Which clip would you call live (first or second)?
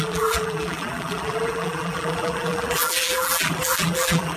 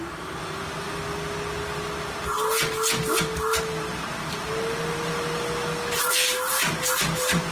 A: second